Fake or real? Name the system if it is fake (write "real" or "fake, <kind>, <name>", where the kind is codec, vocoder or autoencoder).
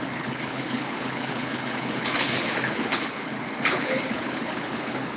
fake, codec, HILCodec